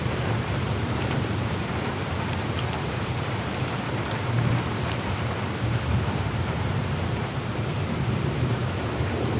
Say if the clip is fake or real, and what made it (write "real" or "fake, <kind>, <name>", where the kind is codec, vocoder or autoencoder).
fake, vocoder, BigVGAN v2